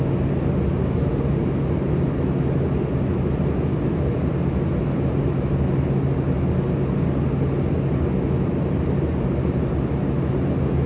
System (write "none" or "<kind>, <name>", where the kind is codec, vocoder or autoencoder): none